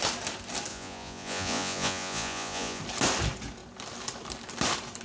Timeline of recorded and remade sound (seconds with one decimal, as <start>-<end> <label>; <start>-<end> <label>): 0.0-0.7 recorded; 0.7-2.8 remade; 2.8-5.0 recorded

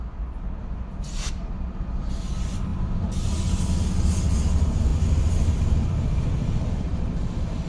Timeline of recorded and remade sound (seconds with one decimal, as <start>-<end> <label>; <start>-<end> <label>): 0.0-2.7 recorded; 2.7-3.6 remade; 3.6-7.7 recorded

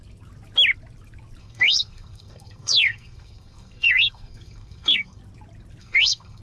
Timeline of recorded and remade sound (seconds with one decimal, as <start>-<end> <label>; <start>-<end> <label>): 0.0-1.4 recorded; 1.4-5.2 remade; 5.2-5.8 recorded; 5.8-6.4 remade

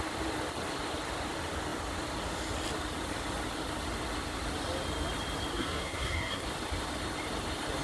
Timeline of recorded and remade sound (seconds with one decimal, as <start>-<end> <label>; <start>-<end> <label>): 0.0-5.5 recorded; 5.5-6.4 remade; 6.4-7.8 recorded

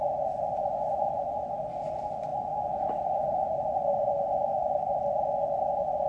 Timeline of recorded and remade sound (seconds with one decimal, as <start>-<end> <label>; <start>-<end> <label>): 0.0-6.1 recorded

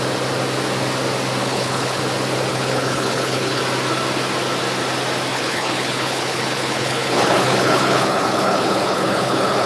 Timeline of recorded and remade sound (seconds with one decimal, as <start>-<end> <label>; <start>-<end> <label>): 0.0-1.4 recorded; 1.4-2.0 remade; 2.0-2.5 recorded; 2.5-3.6 remade; 3.6-5.3 recorded; 5.3-9.7 remade